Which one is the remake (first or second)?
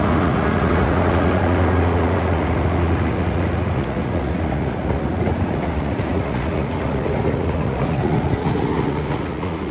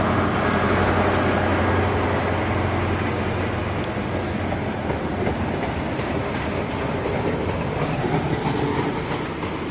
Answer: first